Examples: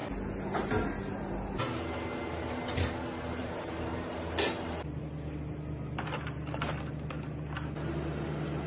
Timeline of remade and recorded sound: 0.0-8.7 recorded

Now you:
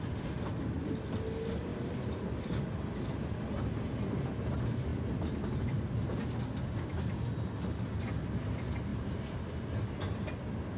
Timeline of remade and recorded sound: 0.0-1.7 recorded; 1.7-2.4 remade; 2.4-4.9 recorded; 4.9-6.1 remade; 6.1-8.9 recorded; 8.9-9.4 remade; 9.4-10.8 recorded